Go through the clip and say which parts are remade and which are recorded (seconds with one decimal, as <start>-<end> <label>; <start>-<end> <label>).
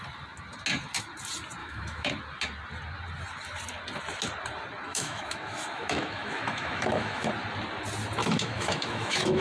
0.0-1.6 recorded; 1.6-2.1 remade; 2.1-4.9 recorded; 4.9-7.3 remade; 7.3-8.2 recorded; 8.2-9.4 remade